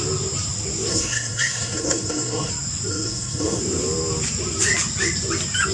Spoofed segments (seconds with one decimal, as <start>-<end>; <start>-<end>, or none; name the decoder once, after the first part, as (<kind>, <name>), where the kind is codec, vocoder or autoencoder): 0.9-2.5 (codec, SNAC); 2.9-3.6